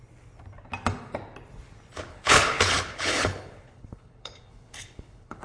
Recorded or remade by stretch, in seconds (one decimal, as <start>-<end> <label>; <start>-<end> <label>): 0.0-2.1 recorded; 2.1-5.4 remade